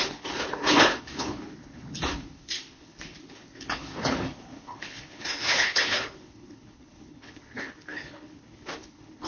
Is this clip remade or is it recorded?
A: remade